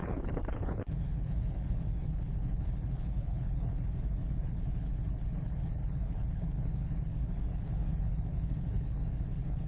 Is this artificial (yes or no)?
yes